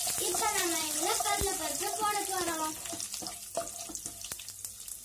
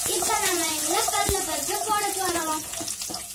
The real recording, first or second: first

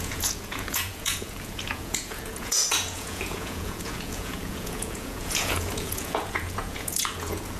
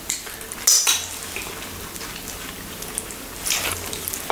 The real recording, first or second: second